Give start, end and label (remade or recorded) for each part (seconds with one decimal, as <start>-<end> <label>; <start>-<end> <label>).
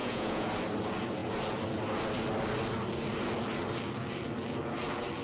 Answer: 0.0-0.5 remade; 0.5-5.2 recorded